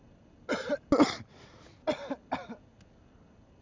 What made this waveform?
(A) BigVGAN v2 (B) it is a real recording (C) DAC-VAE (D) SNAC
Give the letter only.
B